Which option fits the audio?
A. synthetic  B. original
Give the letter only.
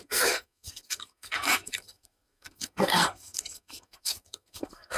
A